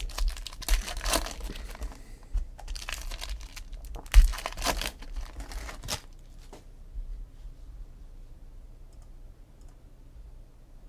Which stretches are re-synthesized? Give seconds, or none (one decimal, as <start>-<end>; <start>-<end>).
none